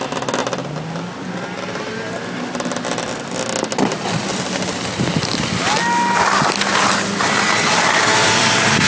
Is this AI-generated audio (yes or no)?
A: no